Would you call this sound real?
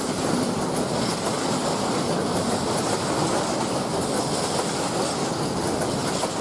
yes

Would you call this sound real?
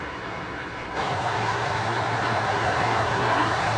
no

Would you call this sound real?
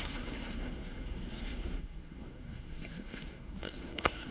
no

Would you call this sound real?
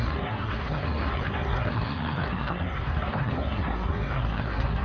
no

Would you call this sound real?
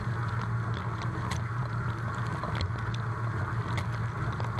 yes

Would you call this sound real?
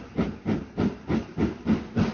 yes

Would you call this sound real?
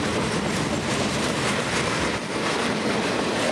yes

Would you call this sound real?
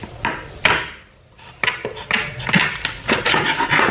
yes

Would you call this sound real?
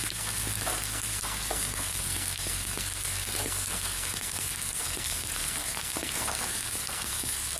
no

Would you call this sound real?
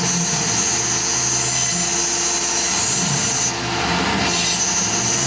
yes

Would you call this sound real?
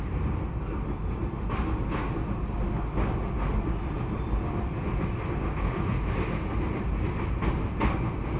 yes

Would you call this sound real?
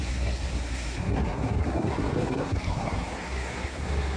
no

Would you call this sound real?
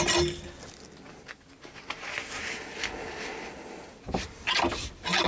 yes